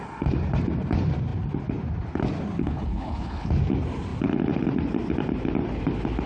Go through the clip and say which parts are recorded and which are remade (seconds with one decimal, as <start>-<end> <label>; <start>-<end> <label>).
0.0-2.6 recorded; 2.6-3.5 remade; 3.5-6.3 recorded